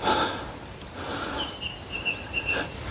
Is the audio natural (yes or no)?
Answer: yes